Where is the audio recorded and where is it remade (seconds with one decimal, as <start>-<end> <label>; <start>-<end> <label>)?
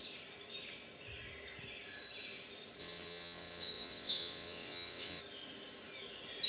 0.0-2.8 recorded; 2.8-5.2 remade; 5.2-6.5 recorded